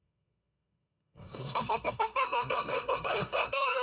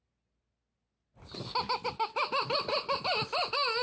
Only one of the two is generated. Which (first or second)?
first